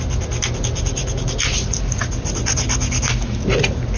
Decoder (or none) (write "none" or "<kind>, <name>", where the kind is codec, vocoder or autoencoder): none